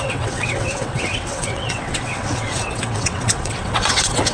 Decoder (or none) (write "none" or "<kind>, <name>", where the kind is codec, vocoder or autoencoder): vocoder, WaveNeXt